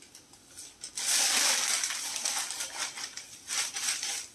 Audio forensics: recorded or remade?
recorded